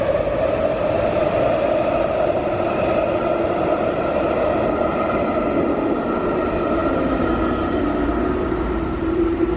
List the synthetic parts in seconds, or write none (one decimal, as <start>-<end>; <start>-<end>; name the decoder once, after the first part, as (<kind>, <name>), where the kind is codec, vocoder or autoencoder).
none